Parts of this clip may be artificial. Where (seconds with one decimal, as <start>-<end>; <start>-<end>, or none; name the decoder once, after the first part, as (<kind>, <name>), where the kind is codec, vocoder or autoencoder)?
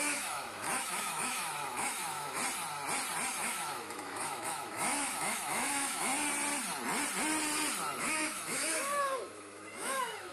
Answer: 0.0-2.4 (autoencoder, DAC-VAE); 3.4-6.1; 8.0-10.3